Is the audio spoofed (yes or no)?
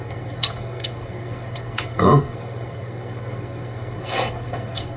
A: yes